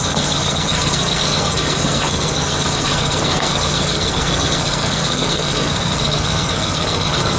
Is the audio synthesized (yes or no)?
yes